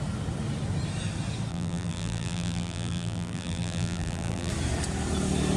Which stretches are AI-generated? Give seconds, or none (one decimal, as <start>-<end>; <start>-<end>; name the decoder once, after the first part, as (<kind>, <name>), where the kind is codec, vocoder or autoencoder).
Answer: 1.5-4.5 (vocoder, BigVGAN v2)